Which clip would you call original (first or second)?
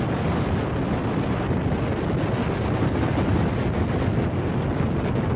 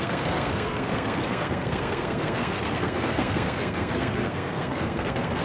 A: first